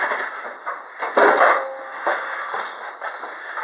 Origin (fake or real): real